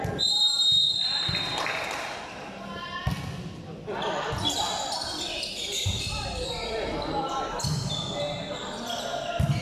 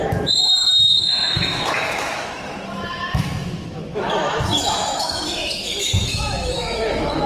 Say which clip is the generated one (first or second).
second